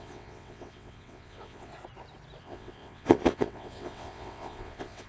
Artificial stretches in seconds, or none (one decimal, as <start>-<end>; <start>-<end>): 0.0-1.7; 2.4-5.1